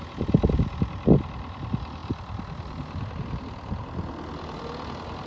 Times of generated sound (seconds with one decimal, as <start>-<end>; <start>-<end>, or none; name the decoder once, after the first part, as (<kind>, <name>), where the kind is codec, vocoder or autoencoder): none